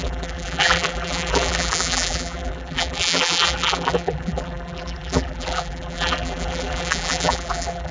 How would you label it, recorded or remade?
remade